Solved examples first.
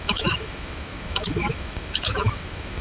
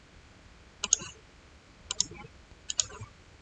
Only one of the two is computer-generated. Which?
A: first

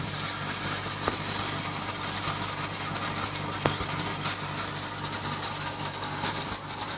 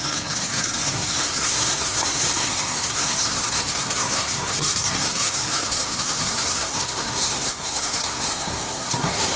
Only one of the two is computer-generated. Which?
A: second